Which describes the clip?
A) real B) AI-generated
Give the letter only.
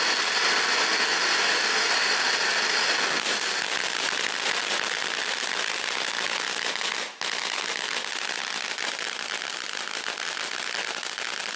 A